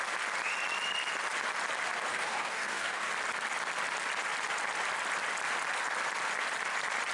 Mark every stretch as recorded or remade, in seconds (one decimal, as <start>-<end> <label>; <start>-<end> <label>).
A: 0.0-2.1 recorded; 2.1-3.1 remade; 3.1-7.1 recorded